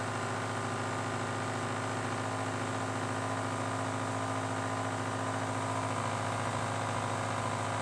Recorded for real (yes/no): yes